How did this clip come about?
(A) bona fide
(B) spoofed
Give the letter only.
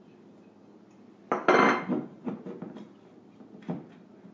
A